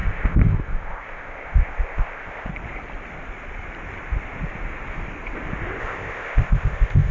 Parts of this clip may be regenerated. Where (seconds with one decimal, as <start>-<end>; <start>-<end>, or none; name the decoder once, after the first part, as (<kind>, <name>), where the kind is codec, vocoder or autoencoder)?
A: 0.0-2.5 (codec, ZipCodec); 5.8-7.1